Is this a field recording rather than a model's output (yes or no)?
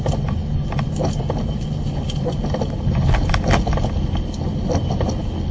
yes